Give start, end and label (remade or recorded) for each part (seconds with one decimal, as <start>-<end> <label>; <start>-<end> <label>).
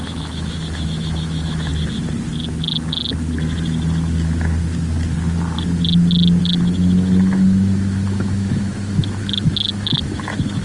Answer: 0.0-1.7 remade; 1.7-6.4 recorded; 6.4-10.6 remade